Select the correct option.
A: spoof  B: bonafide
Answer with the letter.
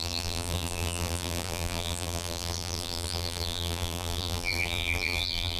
A